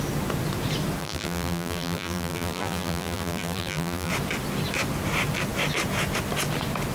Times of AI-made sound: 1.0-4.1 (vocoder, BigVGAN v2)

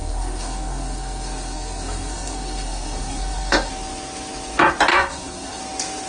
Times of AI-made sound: 0.0-3.7 (codec, SNAC); 4.9-5.6